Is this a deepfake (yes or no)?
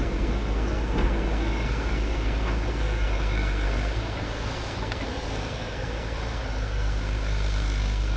yes